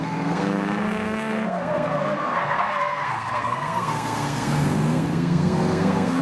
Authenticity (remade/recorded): remade